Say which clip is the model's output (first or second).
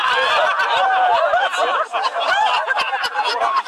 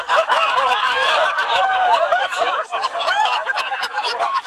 second